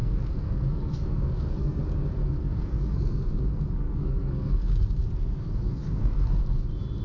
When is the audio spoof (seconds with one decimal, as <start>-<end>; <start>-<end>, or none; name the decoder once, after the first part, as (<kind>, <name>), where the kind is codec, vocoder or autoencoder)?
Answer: 0.0-1.8 (codec, SNAC); 2.2-6.4